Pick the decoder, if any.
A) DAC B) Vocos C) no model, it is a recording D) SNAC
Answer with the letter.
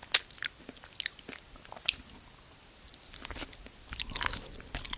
C